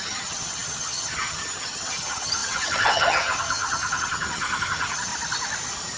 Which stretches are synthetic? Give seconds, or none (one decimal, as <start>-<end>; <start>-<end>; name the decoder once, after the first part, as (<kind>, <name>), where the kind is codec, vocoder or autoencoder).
0.0-5.1 (vocoder, HiFi-GAN)